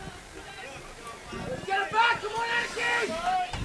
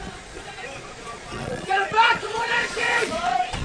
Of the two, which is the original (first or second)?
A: first